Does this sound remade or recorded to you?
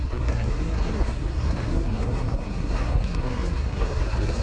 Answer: remade